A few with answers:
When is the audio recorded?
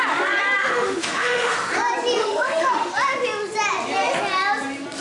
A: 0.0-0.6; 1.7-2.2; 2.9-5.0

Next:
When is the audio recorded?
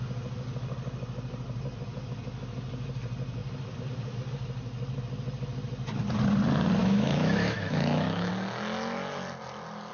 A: 0.0-6.8; 8.3-9.9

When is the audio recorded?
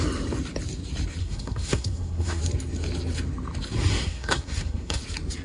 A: 0.0-1.2; 2.4-3.9; 5.0-5.4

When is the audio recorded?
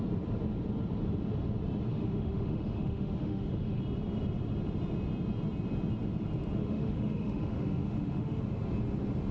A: 0.0-1.9; 3.8-6.6; 8.4-9.3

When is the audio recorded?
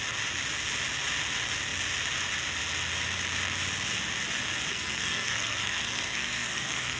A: 0.0-4.7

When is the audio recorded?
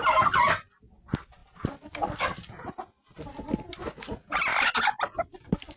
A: 0.0-3.8; 4.4-5.8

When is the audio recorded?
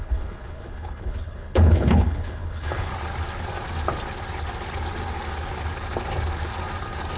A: 2.9-7.2